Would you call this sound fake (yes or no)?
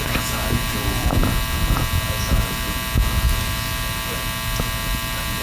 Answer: no